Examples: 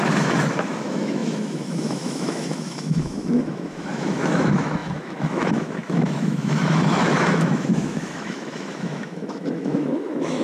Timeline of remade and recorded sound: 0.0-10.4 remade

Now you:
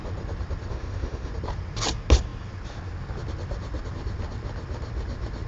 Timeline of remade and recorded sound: 0.0-0.7 recorded; 0.7-1.3 remade; 1.3-5.5 recorded

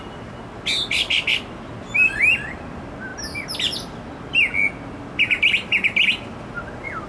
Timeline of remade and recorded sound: 0.0-7.1 recorded

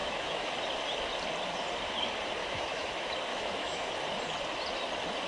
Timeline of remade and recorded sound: 0.0-0.5 remade; 0.5-2.4 recorded; 2.4-2.9 remade; 2.9-3.3 recorded; 3.3-3.9 remade; 3.9-5.3 recorded

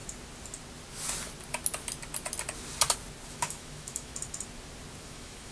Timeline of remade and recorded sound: 0.0-3.3 recorded; 3.3-4.1 remade; 4.1-5.0 recorded; 5.0-5.5 remade